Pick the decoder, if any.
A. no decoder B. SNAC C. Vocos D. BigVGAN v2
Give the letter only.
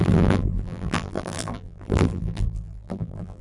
D